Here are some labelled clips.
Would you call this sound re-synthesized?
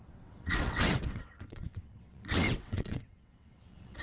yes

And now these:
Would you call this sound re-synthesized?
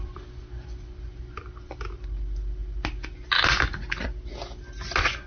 no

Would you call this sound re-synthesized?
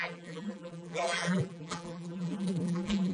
yes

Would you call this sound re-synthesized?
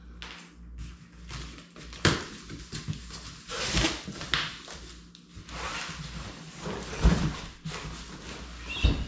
no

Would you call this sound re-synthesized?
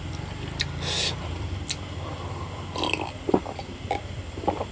no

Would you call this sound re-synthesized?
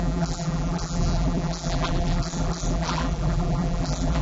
yes